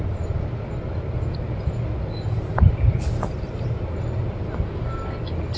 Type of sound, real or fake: real